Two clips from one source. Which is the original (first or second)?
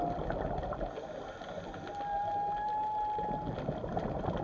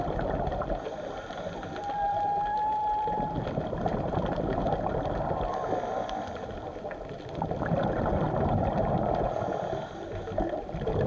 first